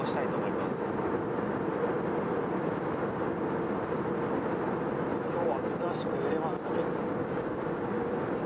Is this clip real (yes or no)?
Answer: yes